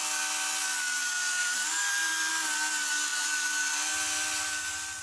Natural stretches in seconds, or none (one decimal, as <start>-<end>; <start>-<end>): 0.0-1.4; 2.3-3.1; 3.9-5.0